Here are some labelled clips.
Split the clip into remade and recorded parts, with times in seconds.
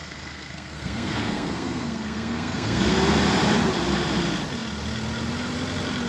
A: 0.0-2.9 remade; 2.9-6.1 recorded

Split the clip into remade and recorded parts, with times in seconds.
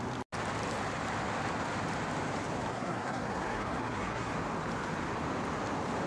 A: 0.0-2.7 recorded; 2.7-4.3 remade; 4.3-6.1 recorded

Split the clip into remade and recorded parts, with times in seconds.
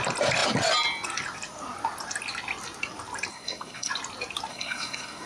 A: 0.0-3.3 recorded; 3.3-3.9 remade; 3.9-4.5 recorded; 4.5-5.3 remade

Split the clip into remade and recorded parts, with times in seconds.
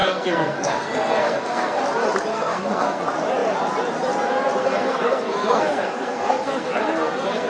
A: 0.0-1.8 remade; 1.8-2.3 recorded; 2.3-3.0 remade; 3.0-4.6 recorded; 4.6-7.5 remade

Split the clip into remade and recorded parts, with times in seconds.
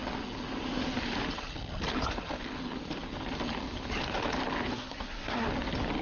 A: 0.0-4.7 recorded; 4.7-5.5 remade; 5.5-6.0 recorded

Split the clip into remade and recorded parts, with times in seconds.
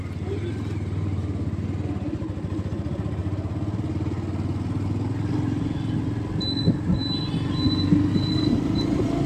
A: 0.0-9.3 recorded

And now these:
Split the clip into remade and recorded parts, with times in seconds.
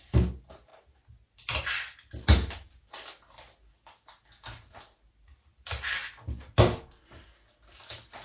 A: 0.0-8.2 recorded